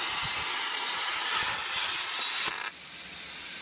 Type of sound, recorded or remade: recorded